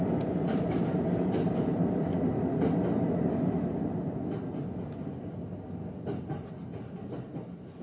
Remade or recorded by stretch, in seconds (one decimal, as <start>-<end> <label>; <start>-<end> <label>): 0.0-1.8 remade; 1.8-6.5 recorded; 6.5-7.8 remade